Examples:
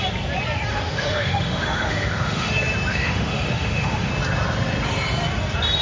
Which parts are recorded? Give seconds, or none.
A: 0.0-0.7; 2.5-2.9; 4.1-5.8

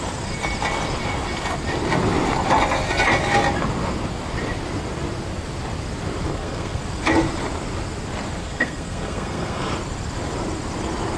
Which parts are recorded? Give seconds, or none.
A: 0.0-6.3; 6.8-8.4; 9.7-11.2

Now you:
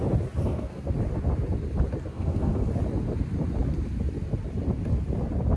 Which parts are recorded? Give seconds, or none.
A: 0.0-0.4; 0.9-2.1; 2.7-5.6

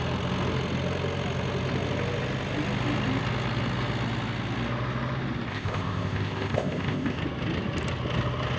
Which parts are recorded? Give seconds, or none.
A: 0.0-5.5; 7.2-8.6